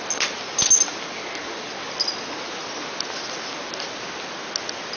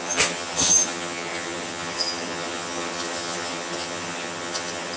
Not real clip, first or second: second